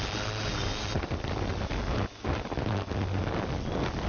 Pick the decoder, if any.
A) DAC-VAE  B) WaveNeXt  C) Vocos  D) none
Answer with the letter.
D